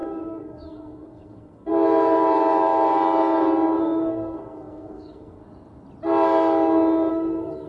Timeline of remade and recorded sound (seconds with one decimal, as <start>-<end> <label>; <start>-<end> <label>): 0.0-1.7 remade; 1.7-3.8 recorded; 3.8-5.4 remade; 5.4-7.1 recorded; 7.1-7.7 remade